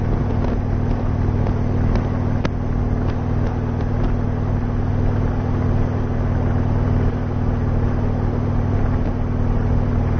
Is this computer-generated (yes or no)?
no